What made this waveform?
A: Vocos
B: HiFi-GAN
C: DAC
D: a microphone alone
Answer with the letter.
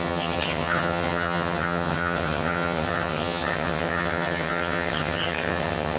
B